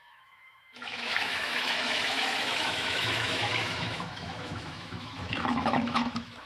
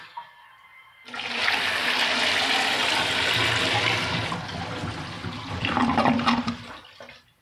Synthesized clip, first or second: first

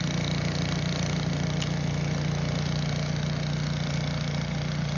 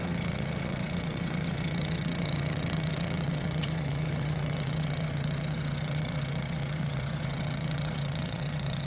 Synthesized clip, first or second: second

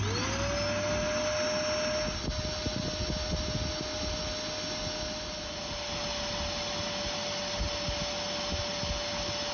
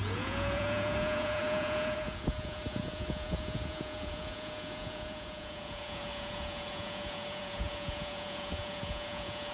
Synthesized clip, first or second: second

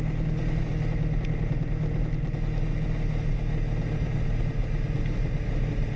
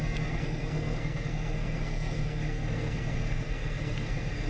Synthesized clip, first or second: second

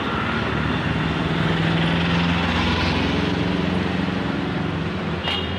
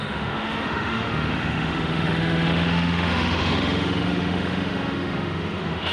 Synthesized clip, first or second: second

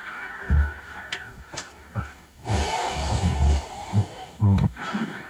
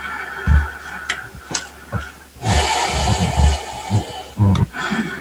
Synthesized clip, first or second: first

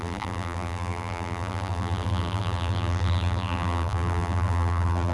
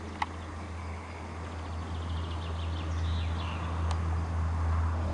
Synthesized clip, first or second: first